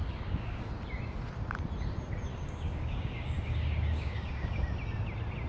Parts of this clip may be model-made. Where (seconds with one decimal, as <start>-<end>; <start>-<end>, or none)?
0.0-0.7; 2.3-4.6